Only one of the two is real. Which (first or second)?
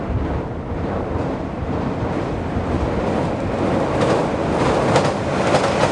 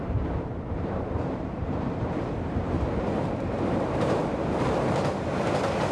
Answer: first